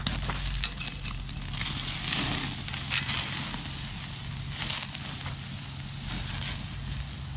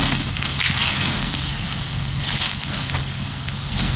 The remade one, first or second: second